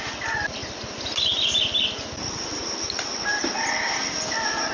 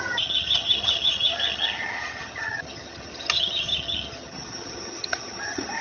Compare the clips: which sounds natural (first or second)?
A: first